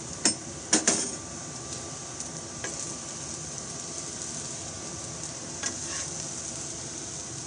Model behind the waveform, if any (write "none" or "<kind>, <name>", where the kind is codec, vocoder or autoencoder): none